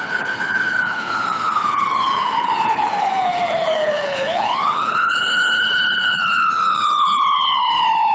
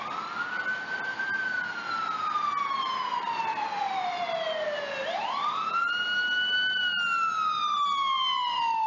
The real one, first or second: second